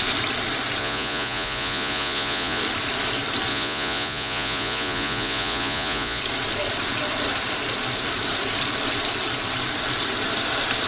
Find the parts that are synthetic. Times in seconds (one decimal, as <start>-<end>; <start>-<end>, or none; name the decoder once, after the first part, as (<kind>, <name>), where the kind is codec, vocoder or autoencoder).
0.8-2.6 (vocoder, Vocos); 3.5-6.2